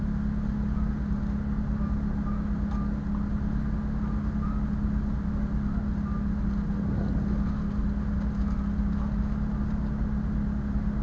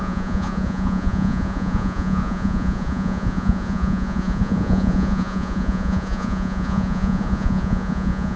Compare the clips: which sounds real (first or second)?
first